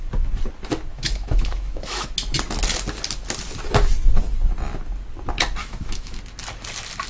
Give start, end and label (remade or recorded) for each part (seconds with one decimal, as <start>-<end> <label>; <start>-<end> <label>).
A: 0.0-0.9 recorded; 0.9-2.1 remade; 2.1-5.6 recorded; 5.6-6.2 remade; 6.2-7.1 recorded